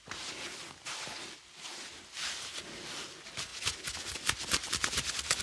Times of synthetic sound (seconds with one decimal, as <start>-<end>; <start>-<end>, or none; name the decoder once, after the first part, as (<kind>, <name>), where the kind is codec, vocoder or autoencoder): none